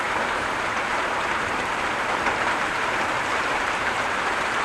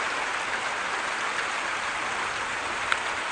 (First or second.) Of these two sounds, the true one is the second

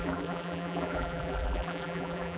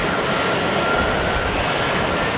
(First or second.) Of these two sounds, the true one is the second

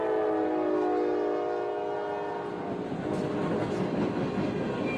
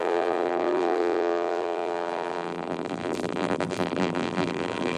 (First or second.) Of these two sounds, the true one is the first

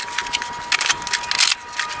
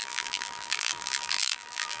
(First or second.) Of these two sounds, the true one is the first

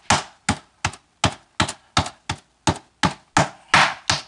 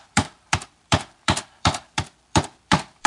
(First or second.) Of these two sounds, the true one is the first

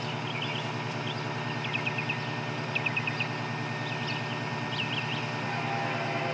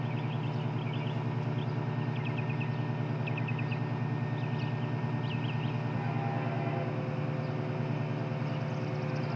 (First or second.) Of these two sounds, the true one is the second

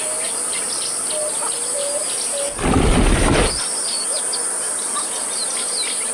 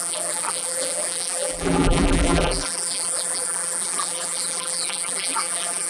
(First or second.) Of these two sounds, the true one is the first